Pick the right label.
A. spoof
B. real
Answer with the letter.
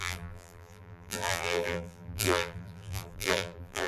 A